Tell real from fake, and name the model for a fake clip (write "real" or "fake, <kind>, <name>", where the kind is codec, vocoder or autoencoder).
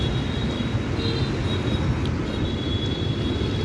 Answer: real